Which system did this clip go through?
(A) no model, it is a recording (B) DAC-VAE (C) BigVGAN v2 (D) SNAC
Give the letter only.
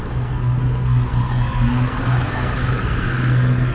D